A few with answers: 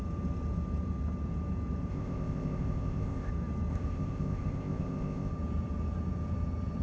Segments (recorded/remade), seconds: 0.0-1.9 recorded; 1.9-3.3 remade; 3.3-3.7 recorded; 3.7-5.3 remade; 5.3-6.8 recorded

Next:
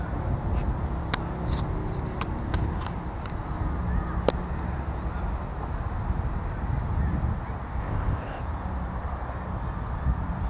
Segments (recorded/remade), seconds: 0.0-7.8 recorded; 7.8-8.4 remade; 8.4-10.5 recorded

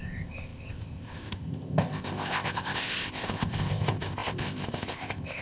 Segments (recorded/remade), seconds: 0.0-5.4 remade

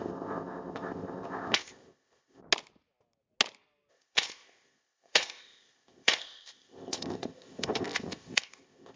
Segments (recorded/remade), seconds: 0.0-2.4 remade; 2.4-3.9 recorded; 3.9-9.0 remade

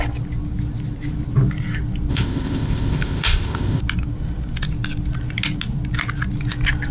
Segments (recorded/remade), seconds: 0.0-2.1 recorded; 2.1-3.8 remade; 3.8-6.9 recorded

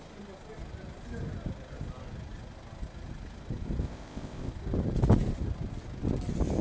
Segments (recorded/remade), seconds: 0.0-3.8 recorded; 3.8-4.5 remade; 4.5-6.6 recorded

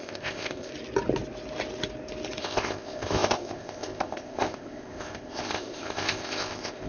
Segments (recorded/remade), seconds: 0.0-0.7 remade; 0.7-2.4 recorded; 2.4-6.9 remade